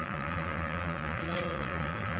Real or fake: fake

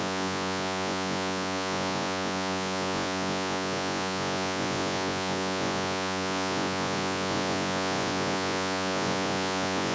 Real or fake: fake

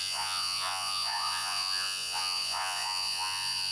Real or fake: fake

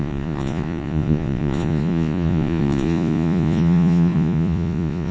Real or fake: fake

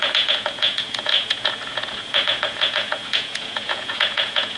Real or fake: fake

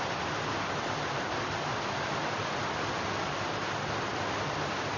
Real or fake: real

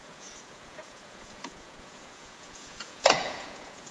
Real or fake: fake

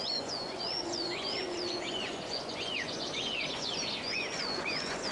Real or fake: fake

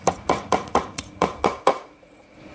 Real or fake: fake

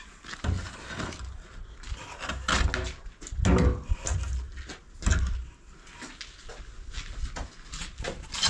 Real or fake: real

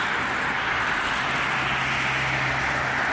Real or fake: real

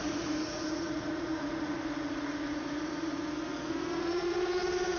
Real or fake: fake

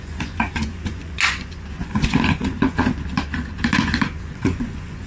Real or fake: fake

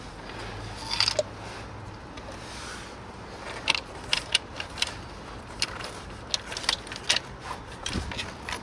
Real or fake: real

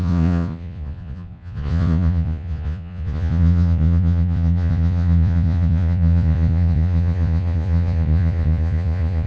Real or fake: fake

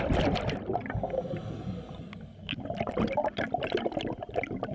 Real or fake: real